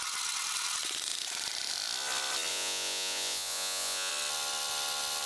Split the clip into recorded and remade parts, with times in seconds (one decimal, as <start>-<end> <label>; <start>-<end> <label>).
0.0-2.5 recorded; 2.5-4.1 remade; 4.1-5.3 recorded